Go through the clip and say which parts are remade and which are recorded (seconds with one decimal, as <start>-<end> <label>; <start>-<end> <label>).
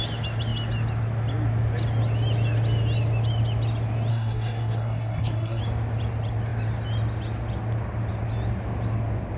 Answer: 0.0-4.1 recorded; 4.1-5.6 remade; 5.6-9.4 recorded